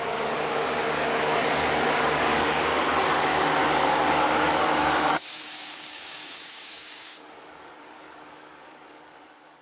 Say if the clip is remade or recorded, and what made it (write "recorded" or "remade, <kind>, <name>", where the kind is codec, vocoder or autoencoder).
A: remade, codec, DAC